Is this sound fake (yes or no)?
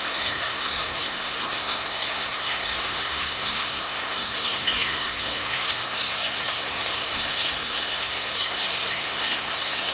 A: yes